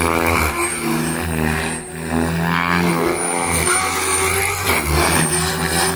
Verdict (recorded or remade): recorded